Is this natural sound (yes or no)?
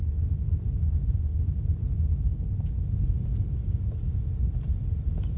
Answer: yes